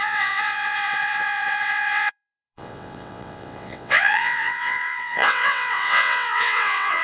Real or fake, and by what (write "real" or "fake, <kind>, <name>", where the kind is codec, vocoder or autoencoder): fake, vocoder, WaveNeXt